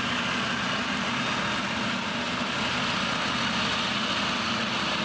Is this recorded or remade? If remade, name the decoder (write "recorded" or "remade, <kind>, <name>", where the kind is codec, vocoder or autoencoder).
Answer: recorded